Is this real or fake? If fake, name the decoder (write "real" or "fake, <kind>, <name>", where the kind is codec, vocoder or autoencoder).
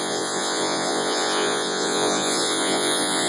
fake, vocoder, Vocos